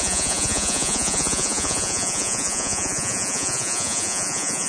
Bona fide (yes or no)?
no